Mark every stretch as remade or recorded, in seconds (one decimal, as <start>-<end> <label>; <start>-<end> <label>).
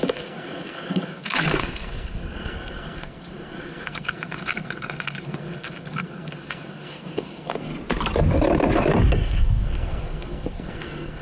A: 0.0-7.7 remade; 7.7-9.1 recorded; 9.1-11.2 remade